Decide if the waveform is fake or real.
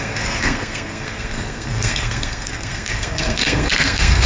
fake